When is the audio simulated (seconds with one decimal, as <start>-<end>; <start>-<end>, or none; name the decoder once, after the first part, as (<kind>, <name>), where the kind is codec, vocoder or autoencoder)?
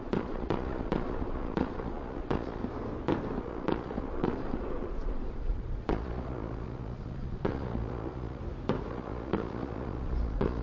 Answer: 0.0-2.6 (vocoder, Vocos); 3.4-8.4; 8.9-10.6